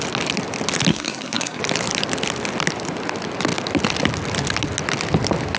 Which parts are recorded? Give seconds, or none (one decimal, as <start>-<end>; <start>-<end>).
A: 0.0-0.9; 1.6-5.6